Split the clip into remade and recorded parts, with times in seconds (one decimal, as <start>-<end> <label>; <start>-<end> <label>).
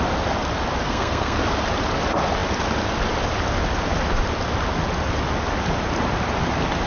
0.0-0.8 recorded; 0.8-1.4 remade; 1.4-6.9 recorded